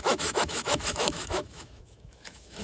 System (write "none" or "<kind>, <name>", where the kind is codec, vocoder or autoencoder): autoencoder, DAC-VAE